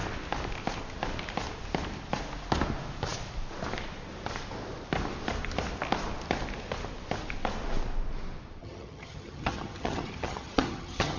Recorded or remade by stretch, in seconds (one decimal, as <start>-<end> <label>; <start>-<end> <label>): 0.0-8.6 recorded; 8.6-11.2 remade